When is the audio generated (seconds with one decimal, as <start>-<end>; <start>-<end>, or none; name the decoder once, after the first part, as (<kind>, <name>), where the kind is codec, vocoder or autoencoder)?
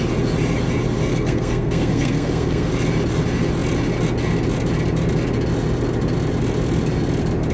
1.1-2.7 (codec, SNAC)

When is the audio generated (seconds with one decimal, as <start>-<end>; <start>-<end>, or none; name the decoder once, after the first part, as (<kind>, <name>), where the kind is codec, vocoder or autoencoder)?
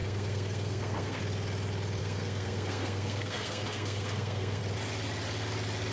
0.0-1.2 (codec, SNAC); 2.0-4.6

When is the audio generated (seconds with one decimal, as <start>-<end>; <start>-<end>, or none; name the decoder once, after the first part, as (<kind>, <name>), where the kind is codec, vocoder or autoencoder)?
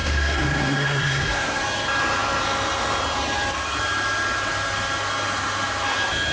0.0-1.6 (codec, SNAC)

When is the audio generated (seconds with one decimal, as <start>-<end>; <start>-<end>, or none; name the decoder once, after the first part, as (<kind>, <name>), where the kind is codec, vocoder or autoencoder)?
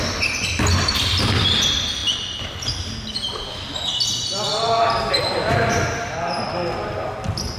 none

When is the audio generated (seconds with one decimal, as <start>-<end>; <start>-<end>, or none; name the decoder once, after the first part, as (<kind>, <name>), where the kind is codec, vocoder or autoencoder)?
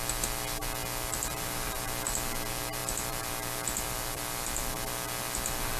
0.8-2.0 (vocoder, BigVGAN v2); 2.8-4.7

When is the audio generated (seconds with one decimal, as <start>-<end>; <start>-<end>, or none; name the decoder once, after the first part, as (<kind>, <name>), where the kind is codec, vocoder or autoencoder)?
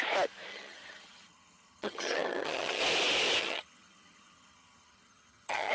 0.5-2.8 (vocoder, HiFi-GAN); 3.4-5.7